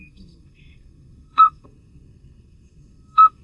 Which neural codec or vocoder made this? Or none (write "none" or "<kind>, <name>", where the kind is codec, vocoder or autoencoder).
codec, SNAC